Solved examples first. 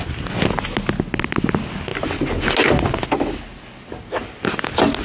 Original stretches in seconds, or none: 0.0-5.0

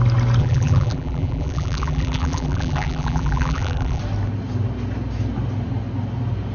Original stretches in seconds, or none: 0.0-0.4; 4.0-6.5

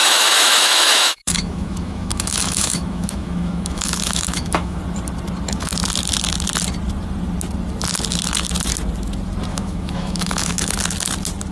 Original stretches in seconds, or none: 4.8-9.5; 10.7-11.5

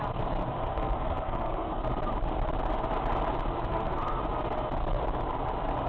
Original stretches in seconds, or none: 0.0-0.6; 1.8-3.7; 4.2-5.9

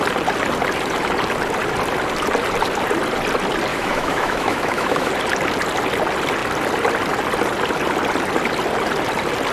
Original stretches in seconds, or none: 0.0-3.7; 5.1-9.5

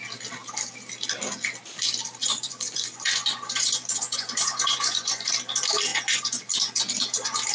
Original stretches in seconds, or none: 0.0-2.2; 5.3-5.9; 6.4-7.5